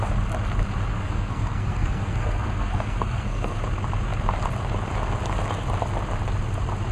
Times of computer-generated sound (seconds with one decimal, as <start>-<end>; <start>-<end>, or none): 0.9-3.6